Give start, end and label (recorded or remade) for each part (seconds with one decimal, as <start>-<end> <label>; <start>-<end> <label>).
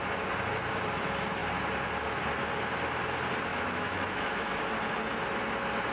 0.0-3.5 recorded; 3.5-4.6 remade; 4.6-5.9 recorded